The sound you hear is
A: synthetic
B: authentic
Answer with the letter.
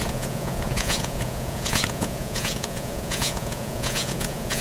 A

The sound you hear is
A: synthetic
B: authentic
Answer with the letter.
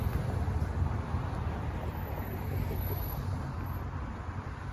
B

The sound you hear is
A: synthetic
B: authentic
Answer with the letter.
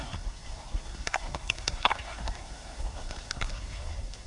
A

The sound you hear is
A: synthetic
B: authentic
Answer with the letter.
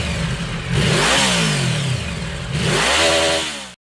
B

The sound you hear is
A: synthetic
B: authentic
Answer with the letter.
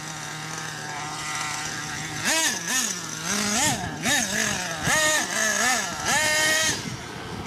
B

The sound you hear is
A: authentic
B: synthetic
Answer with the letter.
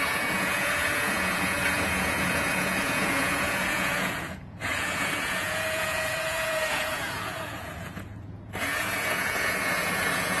B